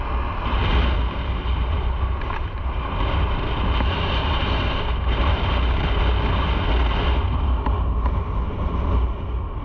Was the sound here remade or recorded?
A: recorded